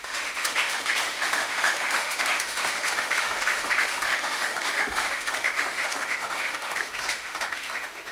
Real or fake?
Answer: fake